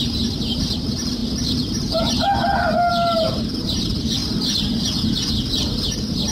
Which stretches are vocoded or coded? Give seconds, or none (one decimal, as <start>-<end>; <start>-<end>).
0.0-1.2; 2.9-4.2; 5.6-6.3